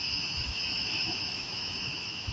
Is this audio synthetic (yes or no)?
yes